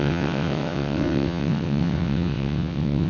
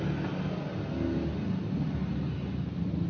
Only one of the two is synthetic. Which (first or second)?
first